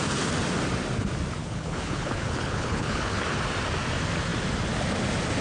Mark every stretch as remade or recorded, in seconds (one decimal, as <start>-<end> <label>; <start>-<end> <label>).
0.0-1.4 recorded; 1.4-3.2 remade; 3.2-5.4 recorded